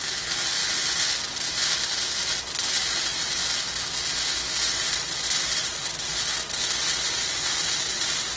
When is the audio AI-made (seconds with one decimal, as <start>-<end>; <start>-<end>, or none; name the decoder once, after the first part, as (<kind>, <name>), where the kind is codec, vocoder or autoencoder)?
0.0-0.6 (vocoder, BigVGAN v2); 1.9-3.4; 4.6-5.8; 6.8-8.4